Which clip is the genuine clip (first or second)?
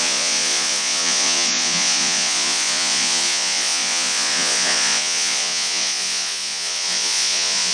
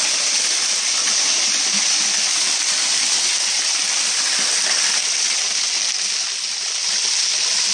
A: second